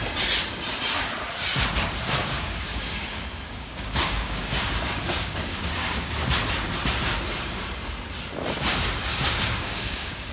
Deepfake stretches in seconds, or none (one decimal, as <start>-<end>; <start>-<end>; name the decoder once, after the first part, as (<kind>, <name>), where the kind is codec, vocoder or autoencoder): 2.2-6.1 (codec, DAC); 9.1-10.3